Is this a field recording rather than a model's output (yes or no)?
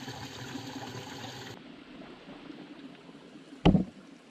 yes